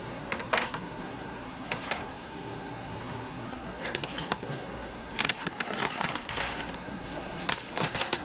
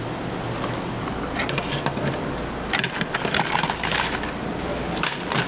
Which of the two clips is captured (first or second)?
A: second